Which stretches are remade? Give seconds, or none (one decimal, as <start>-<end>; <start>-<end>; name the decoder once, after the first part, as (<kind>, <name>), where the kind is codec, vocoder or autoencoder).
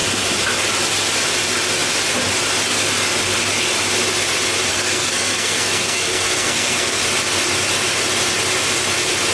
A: 4.7-7.0 (codec, SNAC)